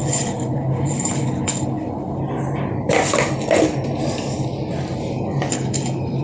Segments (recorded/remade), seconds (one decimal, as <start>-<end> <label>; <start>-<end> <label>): 0.0-2.2 remade; 2.2-5.5 recorded; 5.5-6.2 remade